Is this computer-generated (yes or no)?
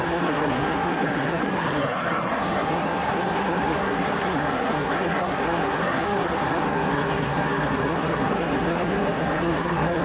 yes